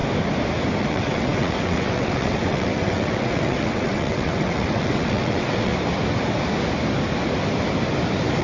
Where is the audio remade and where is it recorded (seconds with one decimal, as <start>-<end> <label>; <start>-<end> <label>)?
0.0-0.8 recorded; 0.8-5.7 remade; 5.7-8.4 recorded